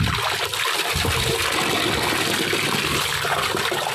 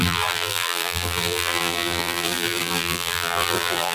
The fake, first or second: second